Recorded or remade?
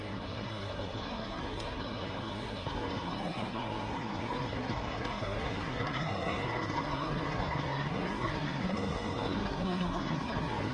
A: remade